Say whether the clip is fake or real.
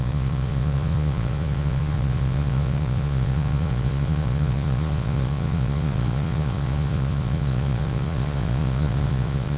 fake